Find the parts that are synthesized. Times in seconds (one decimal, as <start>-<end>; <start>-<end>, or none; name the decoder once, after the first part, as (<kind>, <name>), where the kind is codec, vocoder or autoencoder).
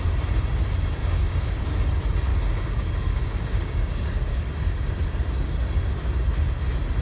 1.0-1.6 (codec, DAC); 2.3-4.4